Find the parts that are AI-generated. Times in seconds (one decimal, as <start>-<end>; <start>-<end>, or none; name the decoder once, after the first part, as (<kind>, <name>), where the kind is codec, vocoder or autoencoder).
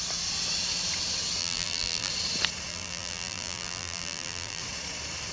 1.4-2.1 (vocoder, BigVGAN v2); 2.7-4.6